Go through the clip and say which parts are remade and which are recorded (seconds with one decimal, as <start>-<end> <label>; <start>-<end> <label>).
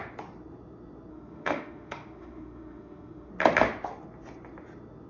0.0-1.1 recorded; 1.1-3.3 remade; 3.3-5.1 recorded